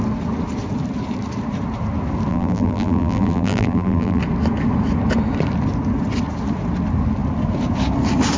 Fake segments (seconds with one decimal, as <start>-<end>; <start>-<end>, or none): 2.3-4.2